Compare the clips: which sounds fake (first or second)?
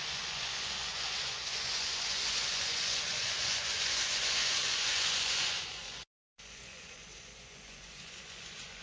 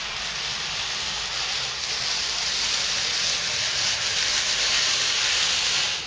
first